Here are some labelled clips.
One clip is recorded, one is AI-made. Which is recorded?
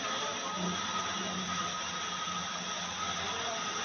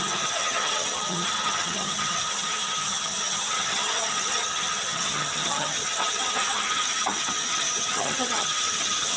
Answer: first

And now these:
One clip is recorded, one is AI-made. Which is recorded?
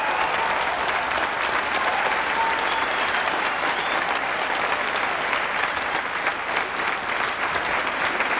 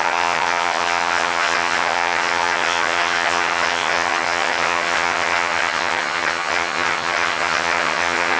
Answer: first